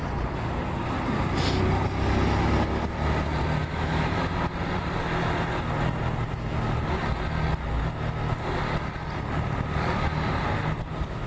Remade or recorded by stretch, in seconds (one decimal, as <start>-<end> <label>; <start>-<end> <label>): 0.0-3.6 recorded; 3.6-4.2 remade; 4.2-11.3 recorded